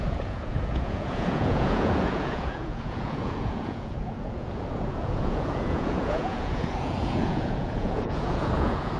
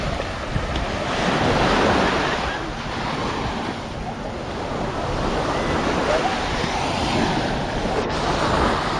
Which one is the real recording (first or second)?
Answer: second